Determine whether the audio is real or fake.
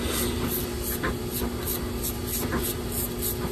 real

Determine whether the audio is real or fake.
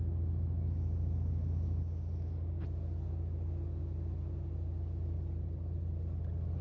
real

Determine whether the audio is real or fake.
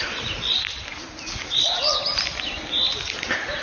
real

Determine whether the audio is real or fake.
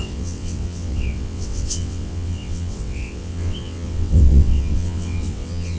fake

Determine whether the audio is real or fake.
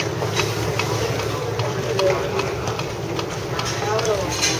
real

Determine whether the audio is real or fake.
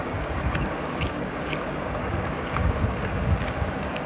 fake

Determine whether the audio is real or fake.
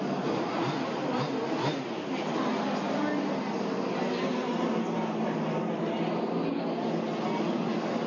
real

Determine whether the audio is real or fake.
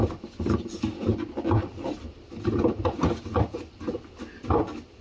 real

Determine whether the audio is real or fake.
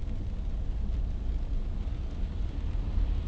real